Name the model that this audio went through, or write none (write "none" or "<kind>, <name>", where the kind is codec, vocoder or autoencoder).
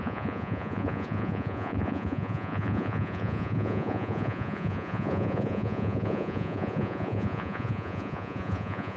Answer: vocoder, Vocos